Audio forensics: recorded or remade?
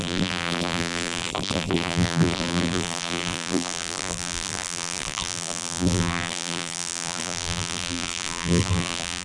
remade